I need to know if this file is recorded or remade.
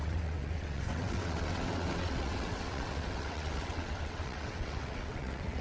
remade